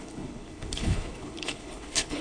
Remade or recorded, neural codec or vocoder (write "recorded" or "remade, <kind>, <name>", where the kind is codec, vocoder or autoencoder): remade, codec, HILCodec